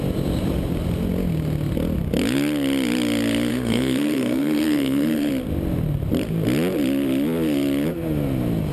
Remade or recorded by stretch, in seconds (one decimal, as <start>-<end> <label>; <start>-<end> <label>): 0.0-3.5 recorded; 3.5-5.3 remade; 5.3-8.7 recorded